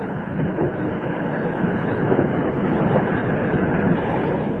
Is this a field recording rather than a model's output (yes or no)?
no